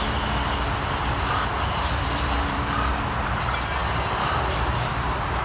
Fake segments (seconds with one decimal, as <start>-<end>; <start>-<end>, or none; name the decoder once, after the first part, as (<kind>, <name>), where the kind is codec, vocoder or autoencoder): 2.0-2.9 (vocoder, BigVGAN v2); 3.8-4.9